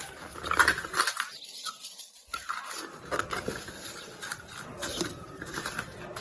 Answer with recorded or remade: recorded